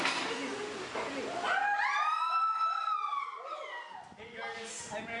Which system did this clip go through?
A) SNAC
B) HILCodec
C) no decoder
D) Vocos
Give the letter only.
C